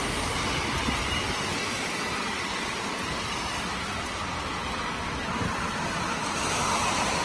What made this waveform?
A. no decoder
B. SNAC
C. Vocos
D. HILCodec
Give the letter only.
A